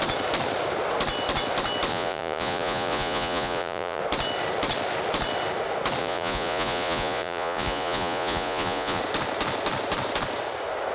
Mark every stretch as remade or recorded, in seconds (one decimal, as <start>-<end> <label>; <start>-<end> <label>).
0.0-1.9 recorded; 1.9-4.0 remade; 4.0-6.0 recorded; 6.0-9.0 remade; 9.0-10.9 recorded